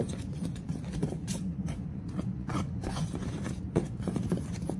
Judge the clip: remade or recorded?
remade